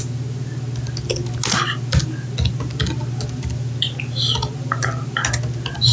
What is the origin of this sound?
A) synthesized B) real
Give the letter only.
B